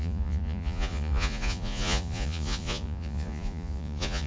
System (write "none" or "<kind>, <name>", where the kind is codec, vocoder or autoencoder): vocoder, Vocos